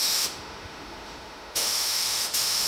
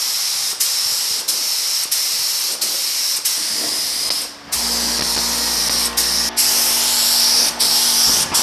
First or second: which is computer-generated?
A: first